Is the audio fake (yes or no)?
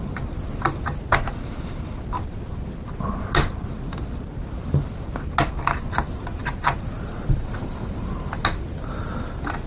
no